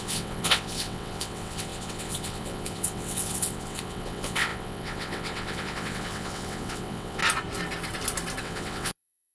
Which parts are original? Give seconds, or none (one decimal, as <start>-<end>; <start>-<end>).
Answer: 7.2-8.4